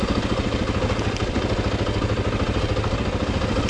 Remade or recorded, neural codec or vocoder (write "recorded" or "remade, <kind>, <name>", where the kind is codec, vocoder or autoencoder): recorded